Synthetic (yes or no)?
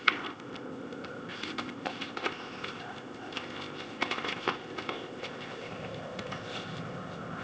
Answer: yes